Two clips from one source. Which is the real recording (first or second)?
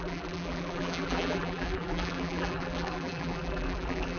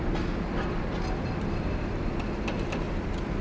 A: second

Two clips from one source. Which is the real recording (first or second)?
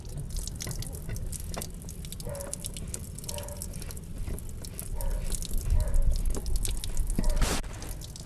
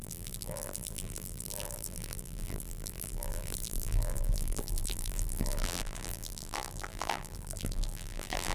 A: first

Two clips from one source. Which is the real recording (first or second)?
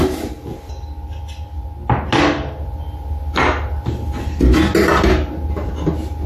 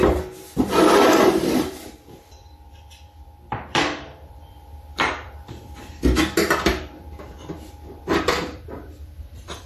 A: first